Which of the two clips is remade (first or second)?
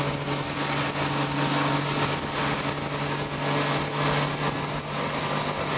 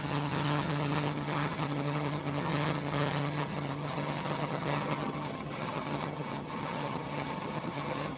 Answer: second